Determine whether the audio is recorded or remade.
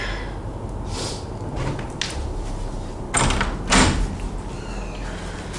recorded